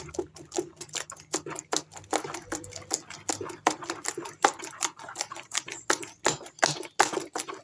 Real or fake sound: real